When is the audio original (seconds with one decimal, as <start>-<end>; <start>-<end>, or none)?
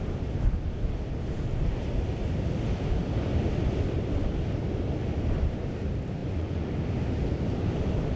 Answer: 0.0-6.2; 6.7-8.2